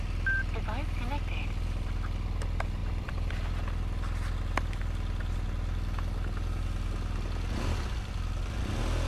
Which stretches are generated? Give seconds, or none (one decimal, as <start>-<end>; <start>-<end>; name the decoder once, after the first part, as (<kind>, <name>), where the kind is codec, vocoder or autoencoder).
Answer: 2.8-3.3 (vocoder, BigVGAN v2)